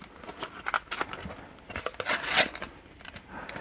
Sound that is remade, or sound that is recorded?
recorded